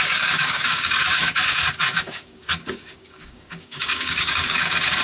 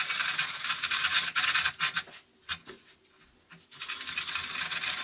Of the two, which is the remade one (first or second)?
first